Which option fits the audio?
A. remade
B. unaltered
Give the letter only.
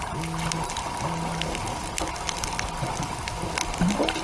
B